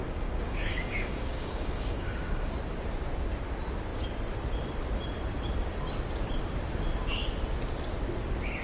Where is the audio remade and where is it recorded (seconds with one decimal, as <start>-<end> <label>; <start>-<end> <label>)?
0.0-2.5 remade; 2.5-8.6 recorded